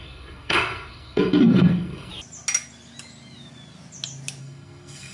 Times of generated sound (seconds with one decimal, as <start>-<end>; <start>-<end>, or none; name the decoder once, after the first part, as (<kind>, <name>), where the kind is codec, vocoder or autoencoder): 0.0-2.1 (codec, SNAC); 4.4-5.1